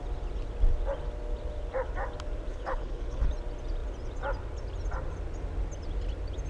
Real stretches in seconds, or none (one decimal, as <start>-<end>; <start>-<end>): 0.0-2.5; 3.3-6.5